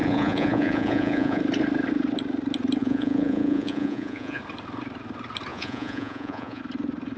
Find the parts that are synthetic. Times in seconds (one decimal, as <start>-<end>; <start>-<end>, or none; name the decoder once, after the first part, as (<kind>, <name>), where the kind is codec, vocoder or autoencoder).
0.0-1.4 (vocoder, Vocos); 2.8-4.4; 5.5-6.6